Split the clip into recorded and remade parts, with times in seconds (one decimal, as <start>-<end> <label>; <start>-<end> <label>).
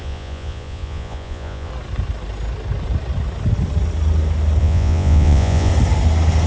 0.0-1.7 remade; 1.7-4.6 recorded; 4.6-5.7 remade; 5.7-6.5 recorded